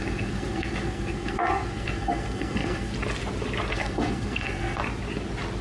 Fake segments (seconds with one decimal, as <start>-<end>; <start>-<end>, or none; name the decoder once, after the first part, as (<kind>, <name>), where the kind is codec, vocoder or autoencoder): 0.0-2.9 (codec, SNAC); 3.7-4.8